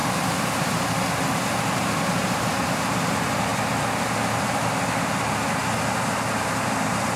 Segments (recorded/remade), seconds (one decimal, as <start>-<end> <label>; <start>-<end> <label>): 0.0-2.9 recorded; 2.9-3.5 remade; 3.5-4.9 recorded; 4.9-5.6 remade; 5.6-6.4 recorded; 6.4-7.2 remade